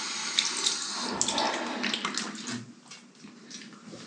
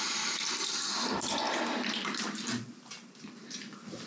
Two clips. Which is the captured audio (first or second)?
first